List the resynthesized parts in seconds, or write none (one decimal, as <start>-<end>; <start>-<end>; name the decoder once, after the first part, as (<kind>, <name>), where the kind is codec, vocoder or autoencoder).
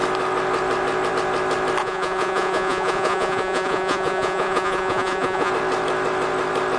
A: 1.8-5.5 (vocoder, Vocos)